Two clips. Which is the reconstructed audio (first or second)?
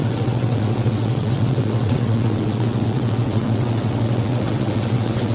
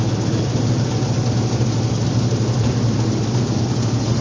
first